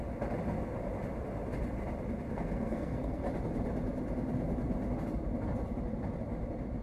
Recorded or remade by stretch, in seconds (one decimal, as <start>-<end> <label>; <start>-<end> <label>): 0.0-2.3 recorded; 2.3-3.2 remade; 3.2-6.8 recorded